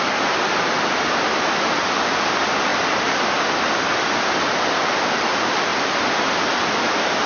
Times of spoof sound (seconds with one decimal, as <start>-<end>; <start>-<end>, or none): 0.0-2.7; 3.6-7.3